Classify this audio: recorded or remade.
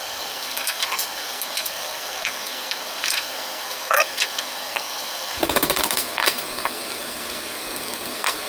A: remade